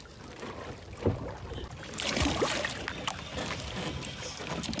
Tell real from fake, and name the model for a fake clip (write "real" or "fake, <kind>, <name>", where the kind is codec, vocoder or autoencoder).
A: real